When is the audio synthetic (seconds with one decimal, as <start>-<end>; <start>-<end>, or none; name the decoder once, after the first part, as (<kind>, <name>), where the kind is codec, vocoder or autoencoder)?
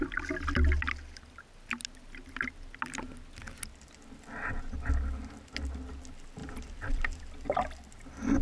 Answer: 6.4-7.2 (vocoder, BigVGAN v2)